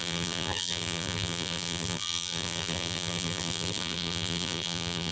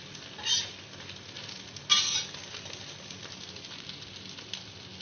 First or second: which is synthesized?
first